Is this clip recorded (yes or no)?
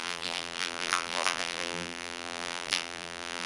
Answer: no